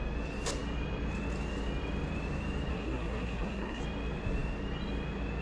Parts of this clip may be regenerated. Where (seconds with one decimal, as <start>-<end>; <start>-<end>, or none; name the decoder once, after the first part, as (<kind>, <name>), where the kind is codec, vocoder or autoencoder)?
2.7-3.8 (codec, SNAC)